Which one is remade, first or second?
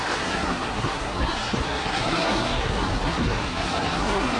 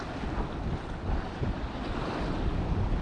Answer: first